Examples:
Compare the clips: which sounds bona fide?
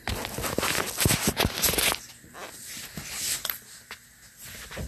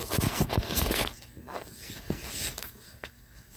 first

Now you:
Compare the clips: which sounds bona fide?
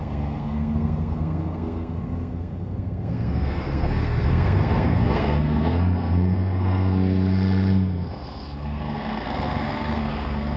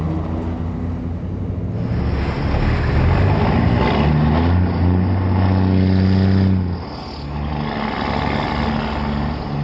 second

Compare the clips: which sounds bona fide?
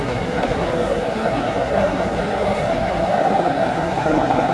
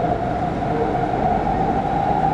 second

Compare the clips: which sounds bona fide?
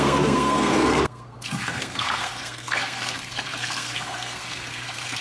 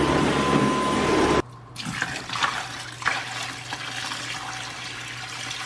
second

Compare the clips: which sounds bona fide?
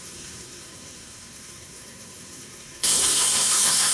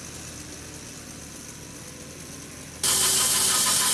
second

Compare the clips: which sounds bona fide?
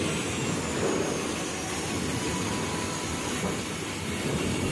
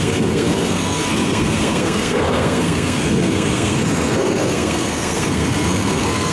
first